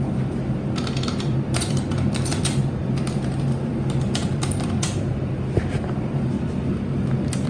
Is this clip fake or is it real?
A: fake